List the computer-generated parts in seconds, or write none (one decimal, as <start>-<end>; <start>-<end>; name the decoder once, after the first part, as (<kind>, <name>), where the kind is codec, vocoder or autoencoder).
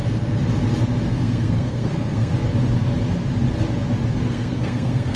1.1-2.3 (codec, SNAC); 4.1-5.2